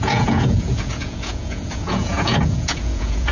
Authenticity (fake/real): fake